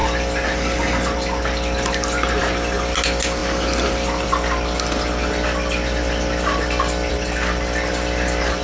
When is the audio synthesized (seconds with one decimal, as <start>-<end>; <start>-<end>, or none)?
none